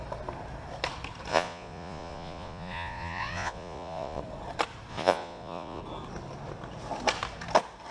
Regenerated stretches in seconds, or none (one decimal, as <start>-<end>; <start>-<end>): 1.3-4.2; 4.9-5.8